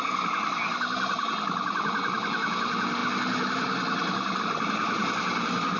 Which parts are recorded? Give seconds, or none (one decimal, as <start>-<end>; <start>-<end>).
0.0-5.8